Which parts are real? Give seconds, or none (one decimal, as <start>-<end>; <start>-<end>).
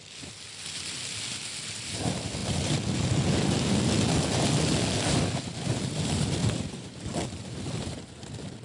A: 0.0-6.4; 8.1-8.6